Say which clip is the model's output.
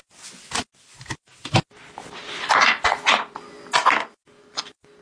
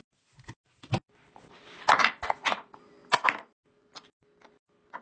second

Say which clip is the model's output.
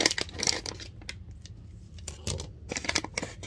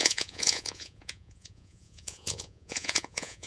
second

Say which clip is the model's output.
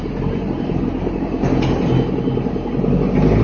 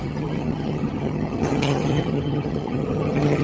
second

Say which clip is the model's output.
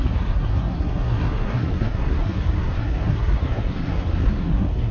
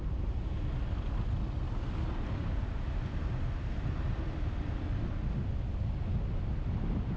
first